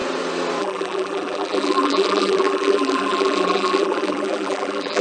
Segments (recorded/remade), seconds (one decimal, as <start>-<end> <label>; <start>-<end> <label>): 0.0-0.6 recorded; 0.6-5.0 remade